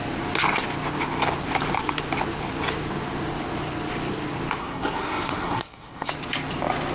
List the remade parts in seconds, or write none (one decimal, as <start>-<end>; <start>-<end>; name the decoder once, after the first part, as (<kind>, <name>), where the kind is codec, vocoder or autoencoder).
4.6-6.1 (codec, SNAC)